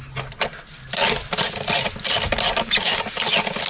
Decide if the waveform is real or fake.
real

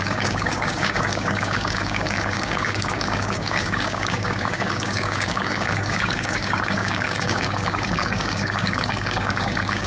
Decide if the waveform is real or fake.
fake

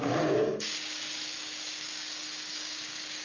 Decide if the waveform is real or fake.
fake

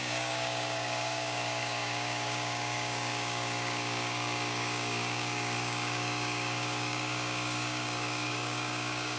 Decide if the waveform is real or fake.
fake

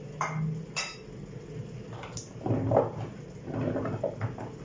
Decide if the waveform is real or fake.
real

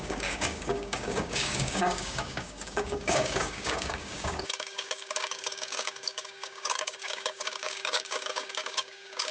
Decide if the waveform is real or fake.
fake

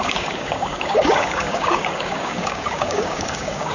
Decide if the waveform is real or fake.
fake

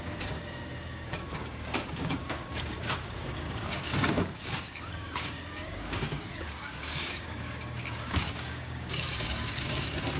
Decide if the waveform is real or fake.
fake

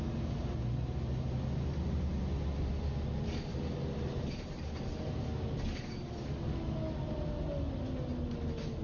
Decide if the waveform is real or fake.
real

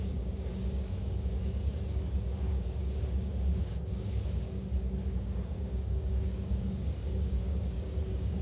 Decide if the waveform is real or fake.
fake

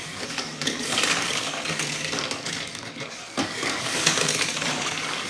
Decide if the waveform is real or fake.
fake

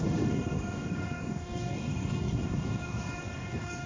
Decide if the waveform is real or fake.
fake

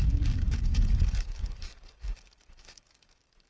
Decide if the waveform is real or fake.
fake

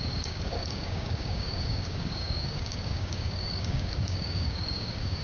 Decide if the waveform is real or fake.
fake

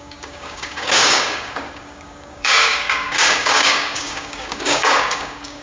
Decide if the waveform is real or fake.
fake